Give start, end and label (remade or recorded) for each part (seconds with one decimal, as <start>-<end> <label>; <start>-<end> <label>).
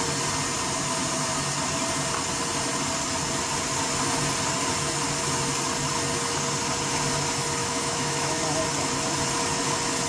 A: 0.0-7.6 recorded; 7.6-8.4 remade; 8.4-10.1 recorded